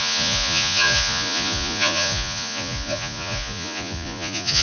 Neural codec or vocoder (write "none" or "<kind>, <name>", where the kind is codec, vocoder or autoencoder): vocoder, Vocos